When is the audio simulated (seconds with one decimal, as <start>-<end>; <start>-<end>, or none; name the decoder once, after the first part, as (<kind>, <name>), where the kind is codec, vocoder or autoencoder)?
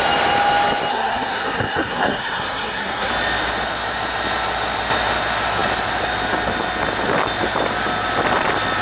0.9-3.1 (codec, SNAC)